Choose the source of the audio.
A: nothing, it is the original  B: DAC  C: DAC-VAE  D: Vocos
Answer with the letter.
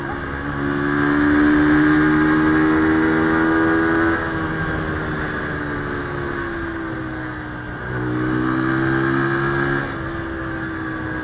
A